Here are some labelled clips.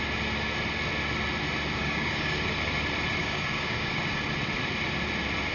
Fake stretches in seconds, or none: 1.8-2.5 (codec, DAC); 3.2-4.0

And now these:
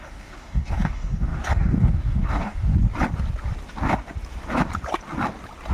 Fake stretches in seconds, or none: 0.0-2.7 (codec, DAC)

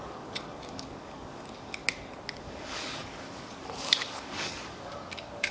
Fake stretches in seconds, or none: 0.0-1.8 (codec, DAC); 2.4-5.5

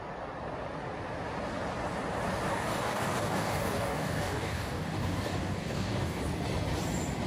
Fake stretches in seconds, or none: 2.5-6.2 (codec, DAC)

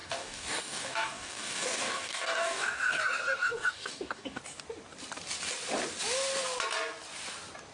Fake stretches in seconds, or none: 0.0-4.4 (codec, DAC)

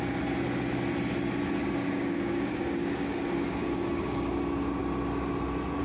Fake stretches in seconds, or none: 1.6-4.3 (codec, DAC)